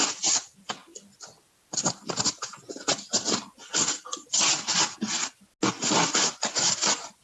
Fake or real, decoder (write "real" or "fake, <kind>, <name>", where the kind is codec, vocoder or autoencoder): real